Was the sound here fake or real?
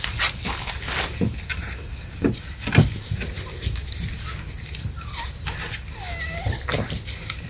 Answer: real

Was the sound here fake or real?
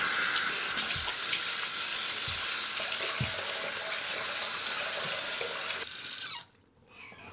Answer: real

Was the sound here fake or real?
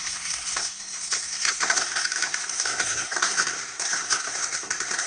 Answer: fake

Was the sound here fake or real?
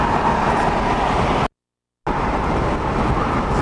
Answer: real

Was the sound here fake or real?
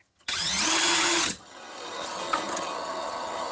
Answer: fake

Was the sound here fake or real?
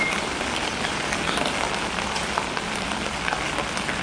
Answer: real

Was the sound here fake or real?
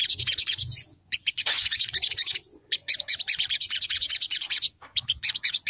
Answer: fake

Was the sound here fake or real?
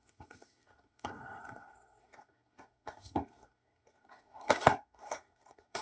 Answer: fake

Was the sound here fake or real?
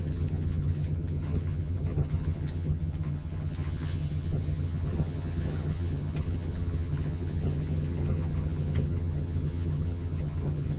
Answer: fake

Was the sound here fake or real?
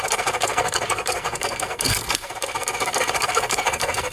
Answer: fake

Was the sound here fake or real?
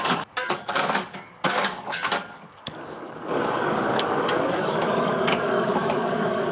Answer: fake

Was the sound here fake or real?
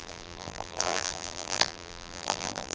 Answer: fake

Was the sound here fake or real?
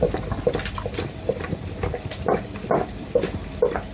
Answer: real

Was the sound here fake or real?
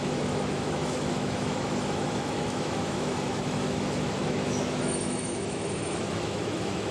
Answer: fake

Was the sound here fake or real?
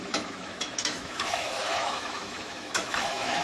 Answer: fake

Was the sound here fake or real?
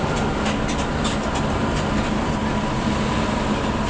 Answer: real